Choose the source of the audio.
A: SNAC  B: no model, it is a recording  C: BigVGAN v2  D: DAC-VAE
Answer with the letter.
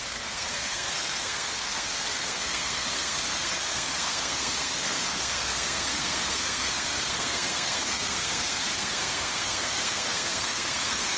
A